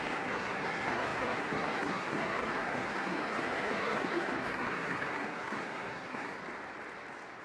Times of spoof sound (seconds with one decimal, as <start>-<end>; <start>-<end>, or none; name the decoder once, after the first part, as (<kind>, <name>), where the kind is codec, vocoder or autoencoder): 0.0-6.4 (codec, SNAC)